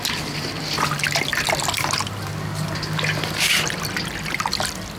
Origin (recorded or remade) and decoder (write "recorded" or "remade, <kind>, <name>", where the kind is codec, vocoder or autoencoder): recorded